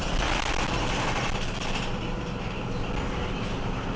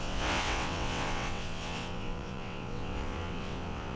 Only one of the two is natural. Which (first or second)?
first